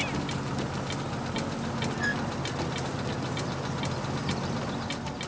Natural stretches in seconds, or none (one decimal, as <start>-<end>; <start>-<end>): 0.0-5.3